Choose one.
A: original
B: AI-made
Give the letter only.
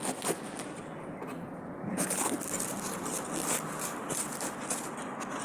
A